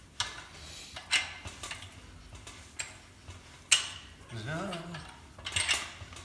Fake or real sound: real